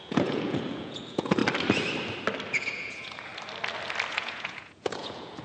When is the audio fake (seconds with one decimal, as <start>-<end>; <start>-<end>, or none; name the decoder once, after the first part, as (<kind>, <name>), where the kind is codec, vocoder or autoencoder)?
0.0-1.4 (vocoder, Vocos); 2.5-3.3; 4.1-5.4